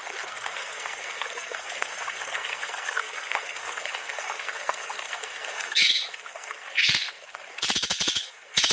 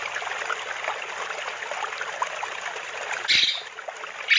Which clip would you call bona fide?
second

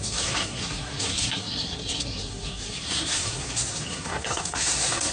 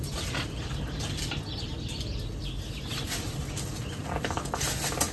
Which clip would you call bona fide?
second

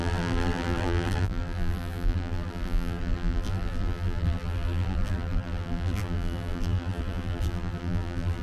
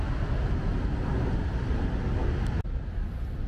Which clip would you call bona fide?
second